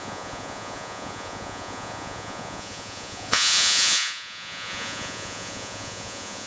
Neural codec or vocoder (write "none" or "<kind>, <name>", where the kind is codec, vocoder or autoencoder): vocoder, Vocos